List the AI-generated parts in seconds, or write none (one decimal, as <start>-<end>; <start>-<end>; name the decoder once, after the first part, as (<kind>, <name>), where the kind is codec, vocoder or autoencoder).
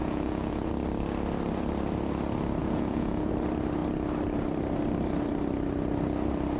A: 0.0-0.7 (vocoder, Vocos); 2.6-3.3